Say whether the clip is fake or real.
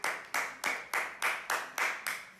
real